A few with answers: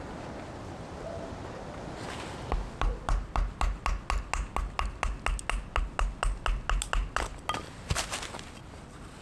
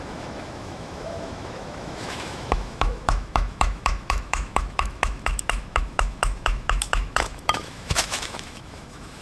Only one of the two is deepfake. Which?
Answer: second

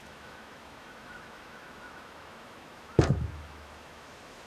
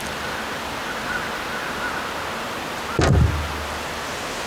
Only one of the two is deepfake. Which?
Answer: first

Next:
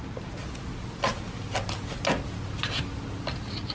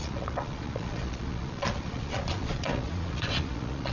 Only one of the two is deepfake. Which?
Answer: second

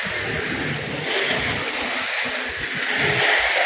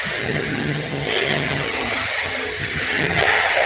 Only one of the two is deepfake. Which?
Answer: second